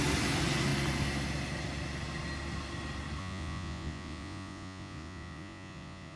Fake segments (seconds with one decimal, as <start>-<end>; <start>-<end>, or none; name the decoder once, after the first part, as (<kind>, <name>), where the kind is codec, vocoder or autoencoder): 3.2-6.2 (vocoder, Vocos)